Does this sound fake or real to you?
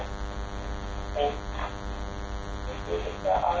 real